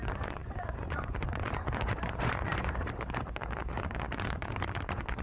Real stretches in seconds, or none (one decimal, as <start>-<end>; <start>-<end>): none